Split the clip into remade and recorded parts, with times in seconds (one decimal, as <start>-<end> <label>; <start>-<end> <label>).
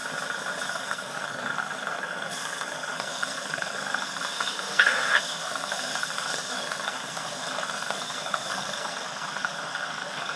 0.0-0.7 recorded; 0.7-10.4 remade